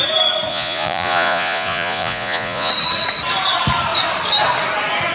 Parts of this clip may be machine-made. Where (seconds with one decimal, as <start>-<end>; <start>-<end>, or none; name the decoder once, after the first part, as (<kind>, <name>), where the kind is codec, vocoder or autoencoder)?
0.5-2.7 (vocoder, Vocos)